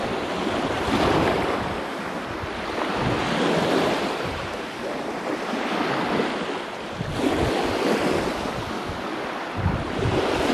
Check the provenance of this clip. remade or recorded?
recorded